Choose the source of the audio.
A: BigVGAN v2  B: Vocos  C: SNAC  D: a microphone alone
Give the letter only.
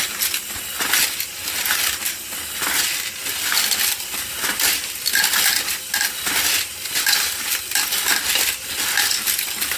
D